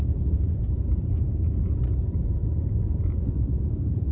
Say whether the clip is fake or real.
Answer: fake